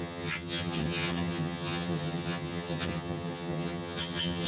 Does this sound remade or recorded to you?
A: remade